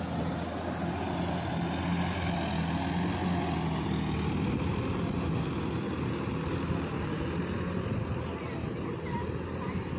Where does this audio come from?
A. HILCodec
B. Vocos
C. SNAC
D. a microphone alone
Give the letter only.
D